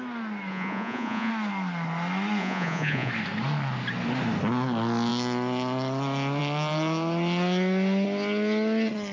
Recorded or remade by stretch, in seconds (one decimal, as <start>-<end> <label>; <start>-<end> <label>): 0.0-0.5 recorded; 0.5-1.3 remade; 1.3-2.4 recorded; 2.4-3.1 remade; 3.1-9.1 recorded